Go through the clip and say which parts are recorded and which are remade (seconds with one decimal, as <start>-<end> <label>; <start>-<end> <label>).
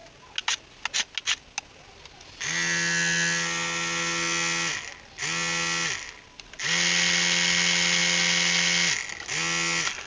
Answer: 0.0-10.1 recorded